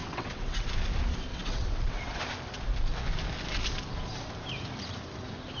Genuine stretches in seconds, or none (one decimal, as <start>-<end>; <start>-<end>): 0.7-1.3; 2.2-5.6